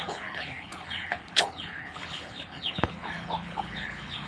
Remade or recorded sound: remade